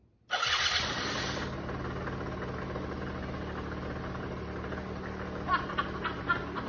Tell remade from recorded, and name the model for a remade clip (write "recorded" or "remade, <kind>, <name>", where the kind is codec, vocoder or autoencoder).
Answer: recorded